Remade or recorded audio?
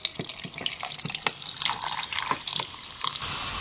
recorded